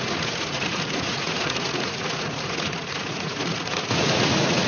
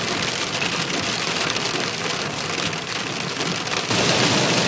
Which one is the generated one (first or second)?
first